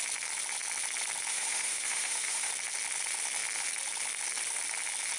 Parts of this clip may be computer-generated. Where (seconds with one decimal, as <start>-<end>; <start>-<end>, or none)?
1.3-2.5